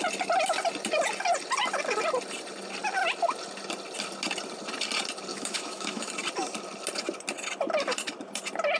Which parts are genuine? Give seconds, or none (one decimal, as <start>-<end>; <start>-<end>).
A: 0.0-5.3; 6.1-8.8